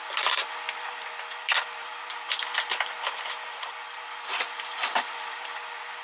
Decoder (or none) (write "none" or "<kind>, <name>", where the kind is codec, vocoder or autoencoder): vocoder, BigVGAN v2